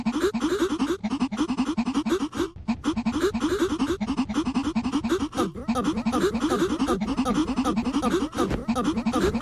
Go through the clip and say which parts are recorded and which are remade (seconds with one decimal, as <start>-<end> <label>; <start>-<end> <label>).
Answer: 0.0-9.4 recorded